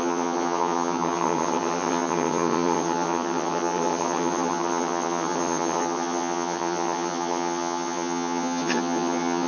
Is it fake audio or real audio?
fake